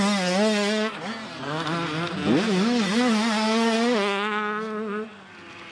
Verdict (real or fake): real